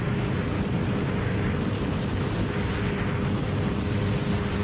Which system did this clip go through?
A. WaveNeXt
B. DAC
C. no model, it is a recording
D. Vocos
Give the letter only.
C